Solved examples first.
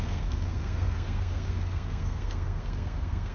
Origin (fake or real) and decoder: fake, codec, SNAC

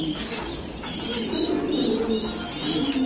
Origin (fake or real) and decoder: real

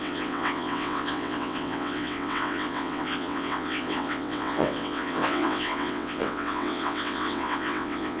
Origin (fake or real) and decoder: fake, vocoder, WaveNeXt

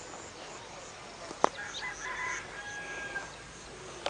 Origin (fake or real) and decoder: real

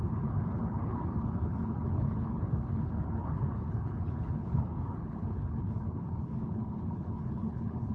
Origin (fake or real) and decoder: fake, codec, HILCodec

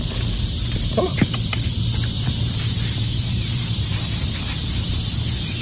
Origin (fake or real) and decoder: fake, vocoder, BigVGAN v2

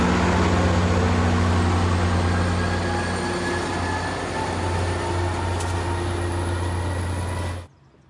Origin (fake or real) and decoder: real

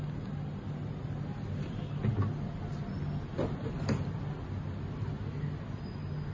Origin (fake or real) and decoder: real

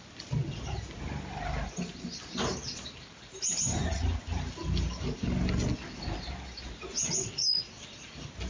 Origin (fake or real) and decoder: real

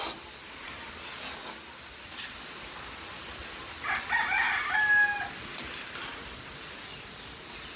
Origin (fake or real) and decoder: real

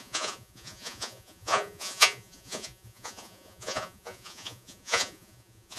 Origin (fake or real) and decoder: fake, vocoder, Vocos